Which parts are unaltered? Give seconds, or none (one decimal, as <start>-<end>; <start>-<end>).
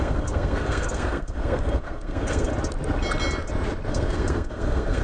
2.5-3.9